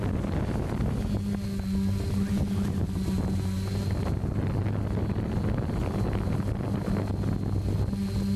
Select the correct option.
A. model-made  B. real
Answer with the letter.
B